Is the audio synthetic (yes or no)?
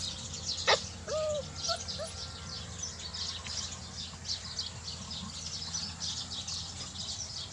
no